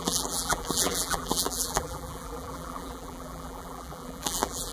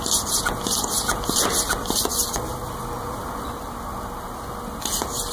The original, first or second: second